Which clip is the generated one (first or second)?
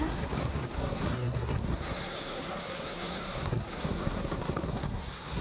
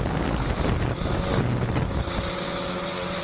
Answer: first